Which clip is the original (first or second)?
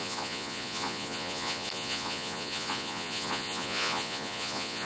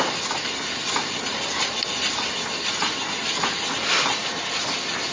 second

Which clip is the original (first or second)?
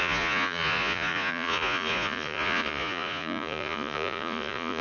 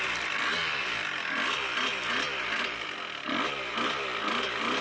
second